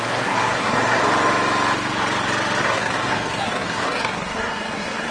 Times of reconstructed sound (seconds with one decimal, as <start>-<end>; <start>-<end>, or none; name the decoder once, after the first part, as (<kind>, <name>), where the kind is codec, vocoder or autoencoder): 0.0-1.0 (codec, SNAC); 2.6-5.1

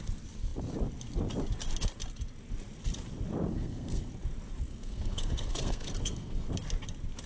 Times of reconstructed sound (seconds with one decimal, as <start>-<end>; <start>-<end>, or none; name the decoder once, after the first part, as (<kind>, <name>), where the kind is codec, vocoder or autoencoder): 3.5-4.1 (codec, SNAC); 4.7-6.5

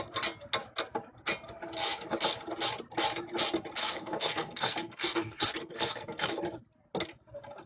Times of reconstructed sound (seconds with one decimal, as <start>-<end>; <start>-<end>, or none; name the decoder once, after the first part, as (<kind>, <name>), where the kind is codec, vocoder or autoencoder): 3.8-6.3 (codec, SNAC)

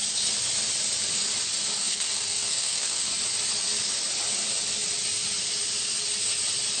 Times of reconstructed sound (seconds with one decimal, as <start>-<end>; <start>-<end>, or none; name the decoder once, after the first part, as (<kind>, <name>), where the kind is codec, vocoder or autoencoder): 1.8-3.1 (codec, SNAC)

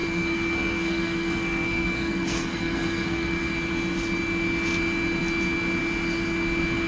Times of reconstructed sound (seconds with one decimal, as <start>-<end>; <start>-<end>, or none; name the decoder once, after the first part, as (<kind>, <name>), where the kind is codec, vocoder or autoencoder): 0.0-3.5 (codec, SNAC)

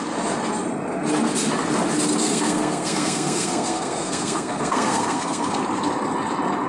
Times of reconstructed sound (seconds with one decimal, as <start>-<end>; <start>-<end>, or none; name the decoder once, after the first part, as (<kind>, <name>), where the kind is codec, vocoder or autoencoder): 2.2-5.6 (codec, SNAC)

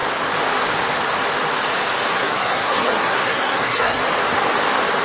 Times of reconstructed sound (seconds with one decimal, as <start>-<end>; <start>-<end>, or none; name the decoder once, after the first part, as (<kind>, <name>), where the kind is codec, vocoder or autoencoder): 2.1-4.0 (codec, SNAC)

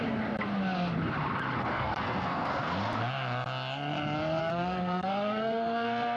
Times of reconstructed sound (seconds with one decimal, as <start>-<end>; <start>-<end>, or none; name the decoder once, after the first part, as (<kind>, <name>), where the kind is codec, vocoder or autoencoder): 1.7-2.5 (codec, SNAC); 4.4-6.2